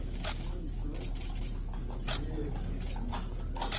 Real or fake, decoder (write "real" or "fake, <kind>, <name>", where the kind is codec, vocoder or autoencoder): real